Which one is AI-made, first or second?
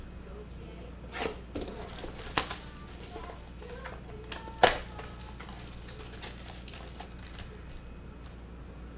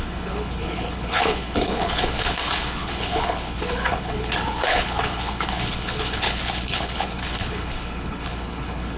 second